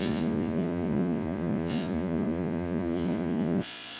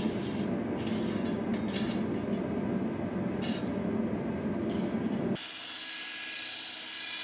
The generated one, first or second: first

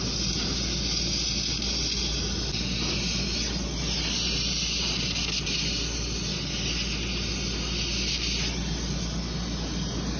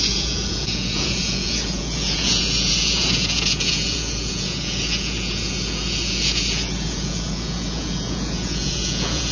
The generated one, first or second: second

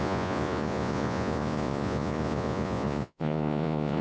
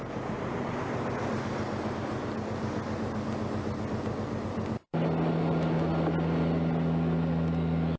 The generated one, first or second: first